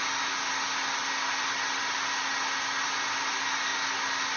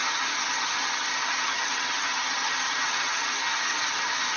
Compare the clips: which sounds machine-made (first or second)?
second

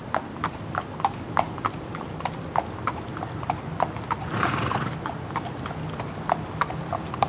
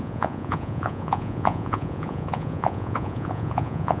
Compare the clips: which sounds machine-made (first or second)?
second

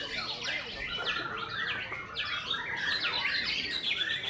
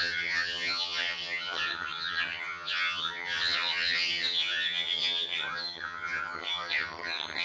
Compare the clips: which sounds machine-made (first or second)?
second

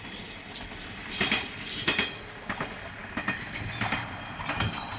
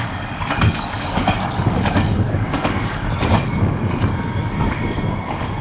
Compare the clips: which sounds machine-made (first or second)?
second